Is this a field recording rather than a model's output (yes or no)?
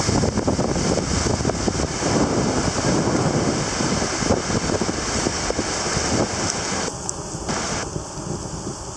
yes